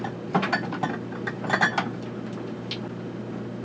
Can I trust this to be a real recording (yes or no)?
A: yes